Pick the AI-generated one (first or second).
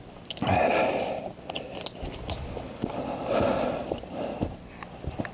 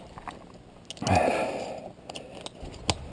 first